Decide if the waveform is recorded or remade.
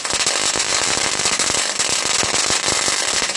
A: recorded